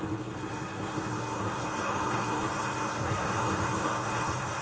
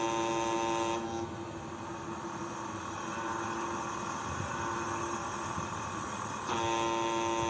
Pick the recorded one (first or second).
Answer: second